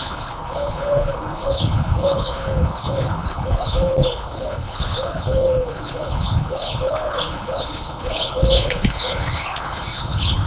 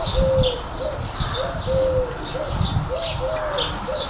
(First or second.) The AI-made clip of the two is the first